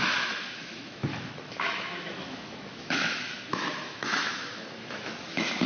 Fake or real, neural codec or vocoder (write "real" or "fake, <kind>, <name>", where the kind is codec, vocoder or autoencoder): fake, autoencoder, DAC-VAE